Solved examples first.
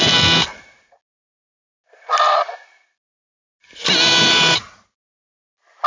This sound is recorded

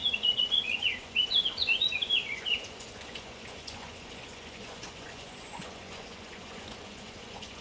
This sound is remade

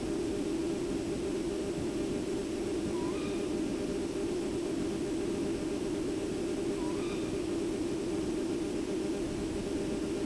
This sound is recorded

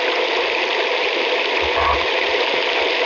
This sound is recorded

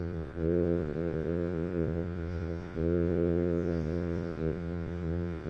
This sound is remade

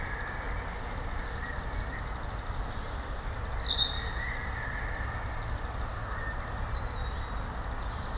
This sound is recorded